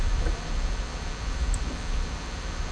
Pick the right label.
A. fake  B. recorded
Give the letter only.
A